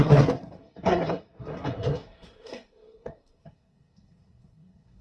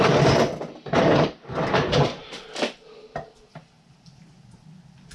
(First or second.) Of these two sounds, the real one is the second